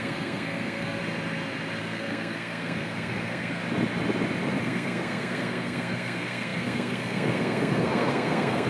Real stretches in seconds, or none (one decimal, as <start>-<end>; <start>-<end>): 1.0-1.8; 3.6-4.6